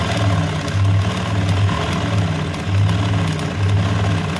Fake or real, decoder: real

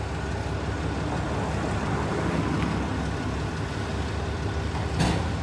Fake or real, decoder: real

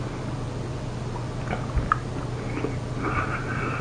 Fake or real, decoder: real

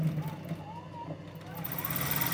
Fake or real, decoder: real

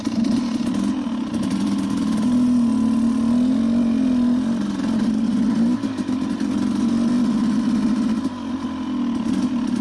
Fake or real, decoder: real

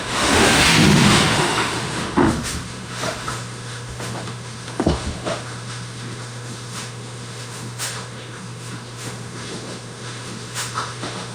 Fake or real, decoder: fake, autoencoder, DAC-VAE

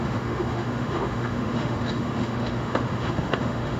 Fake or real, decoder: fake, autoencoder, DAC-VAE